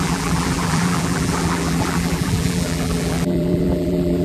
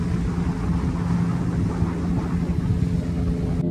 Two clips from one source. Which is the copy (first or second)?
first